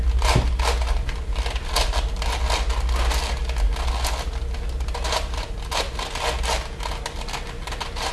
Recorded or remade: recorded